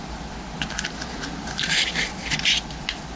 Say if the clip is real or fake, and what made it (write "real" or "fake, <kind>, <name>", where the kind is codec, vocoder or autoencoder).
real